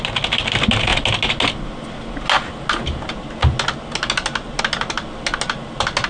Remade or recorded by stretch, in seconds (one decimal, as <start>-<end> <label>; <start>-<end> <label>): 0.0-6.1 recorded